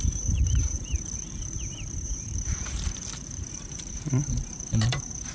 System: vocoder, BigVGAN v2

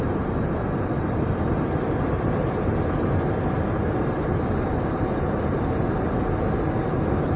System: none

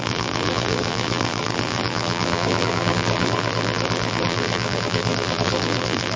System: vocoder, BigVGAN v2